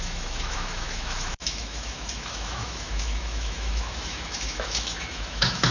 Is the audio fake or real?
fake